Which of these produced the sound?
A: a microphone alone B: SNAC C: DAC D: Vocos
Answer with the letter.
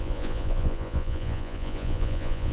D